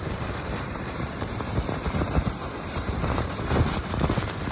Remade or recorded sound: remade